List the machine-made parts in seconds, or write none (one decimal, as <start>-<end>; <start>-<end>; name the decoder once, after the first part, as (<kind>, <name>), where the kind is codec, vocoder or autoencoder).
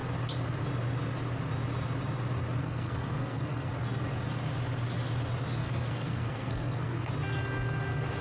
2.6-3.7 (codec, SNAC); 5.6-7.1